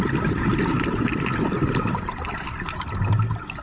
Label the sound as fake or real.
real